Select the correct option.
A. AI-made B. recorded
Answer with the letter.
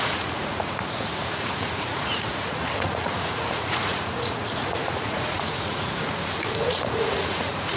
A